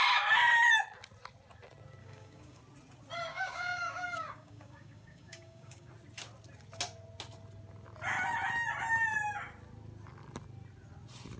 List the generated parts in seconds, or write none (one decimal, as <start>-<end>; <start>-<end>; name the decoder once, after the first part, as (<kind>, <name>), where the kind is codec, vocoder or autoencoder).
2.0-2.6 (codec, DAC); 3.3-5.9